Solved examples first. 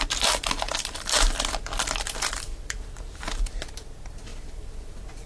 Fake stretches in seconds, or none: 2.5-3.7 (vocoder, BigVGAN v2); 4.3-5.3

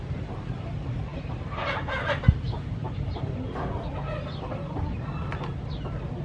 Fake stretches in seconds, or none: 1.1-2.2 (vocoder, BigVGAN v2); 2.8-3.7

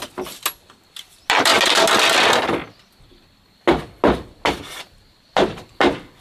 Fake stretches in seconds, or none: none

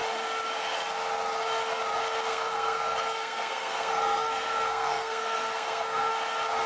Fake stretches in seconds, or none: 2.3-6.1 (codec, SNAC)

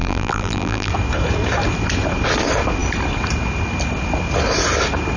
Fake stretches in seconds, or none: 0.0-0.9 (vocoder, BigVGAN v2)

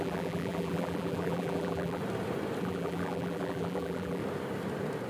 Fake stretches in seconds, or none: 0.0-2.0 (vocoder, BigVGAN v2); 2.6-4.2

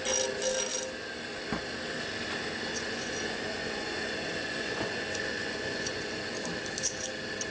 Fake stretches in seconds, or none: 2.7-6.3 (vocoder, Vocos)

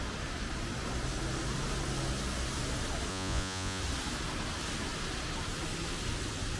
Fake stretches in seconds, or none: 3.1-3.8 (vocoder, Vocos)